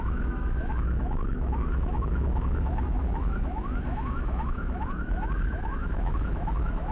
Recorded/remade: remade